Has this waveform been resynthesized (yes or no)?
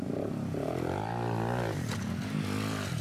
no